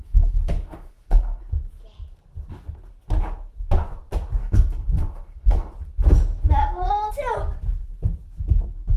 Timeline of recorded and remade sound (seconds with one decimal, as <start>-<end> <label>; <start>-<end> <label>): 0.0-1.4 remade; 1.4-4.4 recorded; 4.4-5.7 remade; 5.7-6.6 recorded; 6.6-7.1 remade; 7.1-9.0 recorded